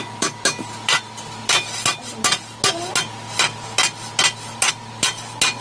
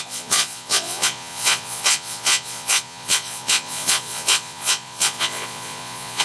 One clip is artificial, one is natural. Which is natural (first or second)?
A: first